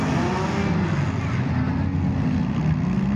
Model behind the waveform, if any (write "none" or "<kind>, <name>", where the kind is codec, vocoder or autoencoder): none